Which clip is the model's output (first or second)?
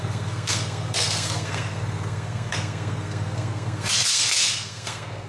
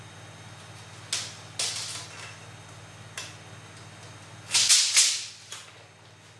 first